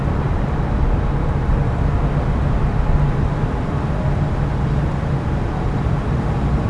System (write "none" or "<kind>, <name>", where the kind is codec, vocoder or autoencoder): none